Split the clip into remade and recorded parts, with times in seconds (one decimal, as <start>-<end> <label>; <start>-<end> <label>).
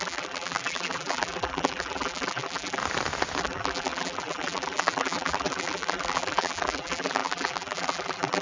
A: 0.0-2.8 remade; 2.8-3.4 recorded; 3.4-8.4 remade